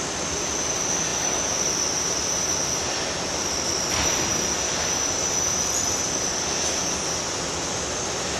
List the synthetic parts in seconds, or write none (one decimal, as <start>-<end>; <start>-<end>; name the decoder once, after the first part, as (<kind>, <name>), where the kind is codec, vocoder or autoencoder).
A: none